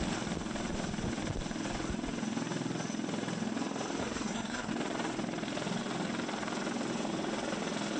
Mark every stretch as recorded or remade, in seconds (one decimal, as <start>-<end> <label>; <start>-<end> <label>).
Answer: 0.0-4.0 recorded; 4.0-4.7 remade; 4.7-8.0 recorded

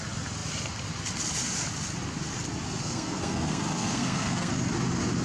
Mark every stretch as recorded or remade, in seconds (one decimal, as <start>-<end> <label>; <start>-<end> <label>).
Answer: 0.0-2.8 recorded; 2.8-4.5 remade; 4.5-5.2 recorded